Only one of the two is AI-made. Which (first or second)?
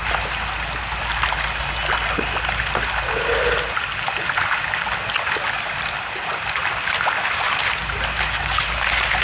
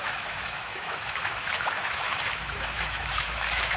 second